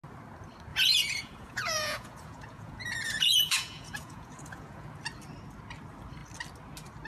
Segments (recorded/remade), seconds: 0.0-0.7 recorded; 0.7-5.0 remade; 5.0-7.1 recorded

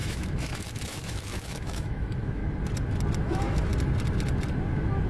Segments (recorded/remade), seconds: 0.0-2.4 remade; 2.4-3.2 recorded; 3.2-3.7 remade; 3.7-5.1 recorded

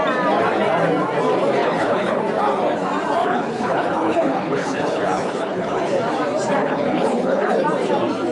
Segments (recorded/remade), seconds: 0.0-1.6 recorded; 1.6-2.2 remade; 2.2-3.2 recorded; 3.2-6.0 remade; 6.0-6.6 recorded; 6.6-7.5 remade; 7.5-8.3 recorded

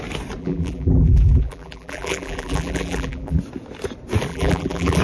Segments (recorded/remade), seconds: 0.0-0.4 recorded; 0.4-3.4 remade; 3.4-4.3 recorded; 4.3-5.0 remade

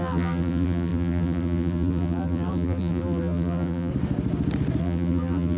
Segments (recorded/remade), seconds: 0.0-3.9 remade; 3.9-4.8 recorded; 4.8-5.6 remade

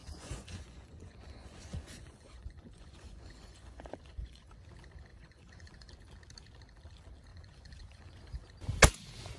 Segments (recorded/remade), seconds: 0.0-4.5 remade; 4.5-5.1 recorded; 5.1-5.9 remade; 5.9-7.3 recorded; 7.3-8.2 remade; 8.2-9.4 recorded